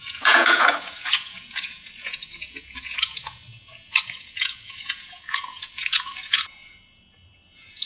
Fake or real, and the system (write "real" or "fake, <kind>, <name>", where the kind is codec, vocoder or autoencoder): fake, vocoder, Vocos